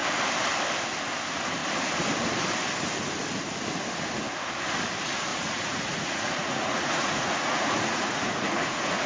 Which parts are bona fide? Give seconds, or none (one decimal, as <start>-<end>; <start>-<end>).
0.0-5.3